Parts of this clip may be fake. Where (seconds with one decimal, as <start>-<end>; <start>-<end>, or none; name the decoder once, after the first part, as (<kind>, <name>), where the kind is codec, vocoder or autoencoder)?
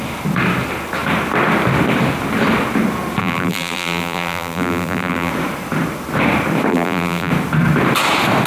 3.2-5.3 (vocoder, BigVGAN v2); 6.7-7.3